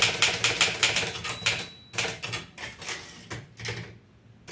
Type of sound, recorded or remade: recorded